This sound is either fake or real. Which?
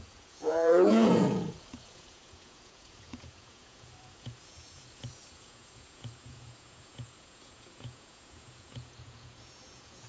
fake